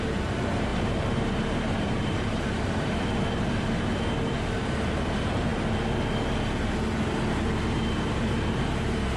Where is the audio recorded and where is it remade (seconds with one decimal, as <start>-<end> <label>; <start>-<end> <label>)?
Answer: 0.0-5.5 remade; 5.5-7.7 recorded; 7.7-9.2 remade